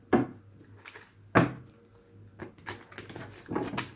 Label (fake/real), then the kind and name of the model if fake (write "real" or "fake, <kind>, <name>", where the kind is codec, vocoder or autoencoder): real